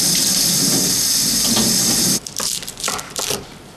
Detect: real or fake real